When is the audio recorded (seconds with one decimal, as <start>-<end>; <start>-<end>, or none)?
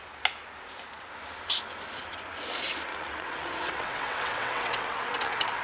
0.0-2.9